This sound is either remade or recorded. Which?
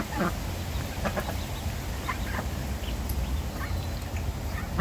recorded